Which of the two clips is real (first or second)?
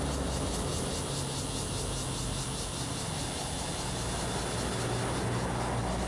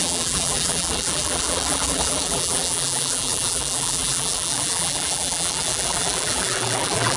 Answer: first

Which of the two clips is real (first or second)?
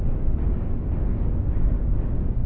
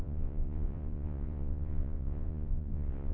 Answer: first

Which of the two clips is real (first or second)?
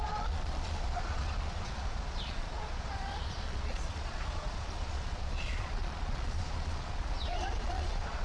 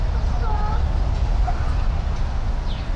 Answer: second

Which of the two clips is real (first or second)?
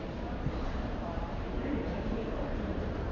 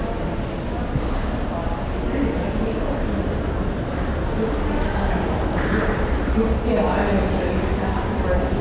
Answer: second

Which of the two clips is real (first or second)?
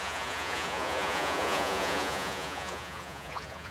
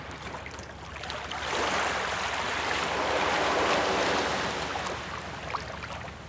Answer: second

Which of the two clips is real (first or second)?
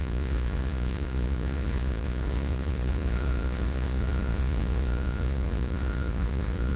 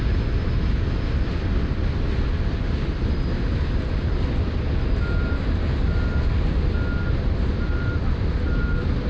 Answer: second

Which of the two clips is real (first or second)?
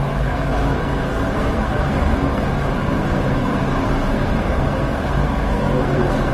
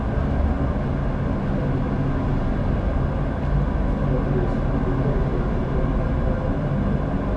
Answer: second